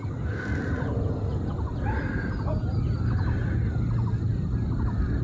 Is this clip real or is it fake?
real